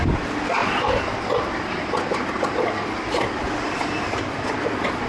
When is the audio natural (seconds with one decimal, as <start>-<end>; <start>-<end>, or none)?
0.0-5.1